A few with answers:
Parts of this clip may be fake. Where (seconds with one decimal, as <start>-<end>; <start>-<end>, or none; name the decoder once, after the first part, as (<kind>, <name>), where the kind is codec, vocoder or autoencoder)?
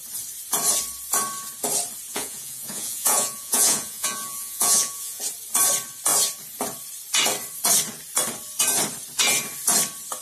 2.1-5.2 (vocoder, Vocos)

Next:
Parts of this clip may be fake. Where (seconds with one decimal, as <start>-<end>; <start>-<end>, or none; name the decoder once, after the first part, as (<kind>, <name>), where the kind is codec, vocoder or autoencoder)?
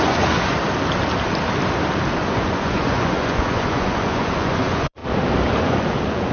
0.0-0.6 (vocoder, Vocos); 2.2-5.0; 5.6-6.3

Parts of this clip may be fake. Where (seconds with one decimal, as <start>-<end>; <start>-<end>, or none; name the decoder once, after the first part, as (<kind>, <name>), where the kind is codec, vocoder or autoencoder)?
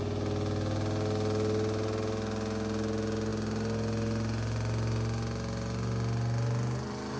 none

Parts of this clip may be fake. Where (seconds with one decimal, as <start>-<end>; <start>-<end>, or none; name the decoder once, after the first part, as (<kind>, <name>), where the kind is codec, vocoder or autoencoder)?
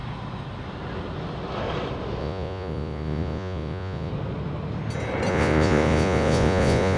2.2-4.1 (vocoder, Vocos); 5.3-7.0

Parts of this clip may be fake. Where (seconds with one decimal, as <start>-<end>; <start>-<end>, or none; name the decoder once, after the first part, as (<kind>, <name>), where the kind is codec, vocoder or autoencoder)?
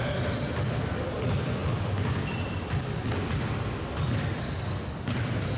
none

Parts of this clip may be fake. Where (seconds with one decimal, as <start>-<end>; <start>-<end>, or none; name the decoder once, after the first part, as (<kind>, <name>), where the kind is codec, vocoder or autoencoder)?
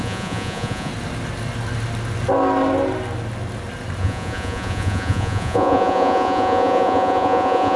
0.0-0.9 (vocoder, Vocos); 4.0-7.8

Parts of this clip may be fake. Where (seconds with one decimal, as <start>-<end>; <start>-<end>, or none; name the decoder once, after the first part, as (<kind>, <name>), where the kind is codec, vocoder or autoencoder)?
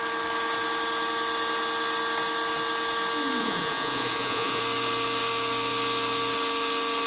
3.4-4.6 (vocoder, Vocos)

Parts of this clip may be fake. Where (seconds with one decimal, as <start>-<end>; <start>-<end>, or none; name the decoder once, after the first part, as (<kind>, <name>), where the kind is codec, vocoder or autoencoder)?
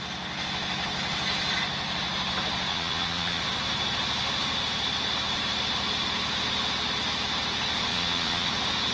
2.7-3.4 (vocoder, Vocos); 7.9-8.5